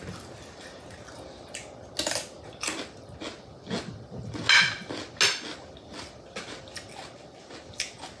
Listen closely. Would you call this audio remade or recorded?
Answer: recorded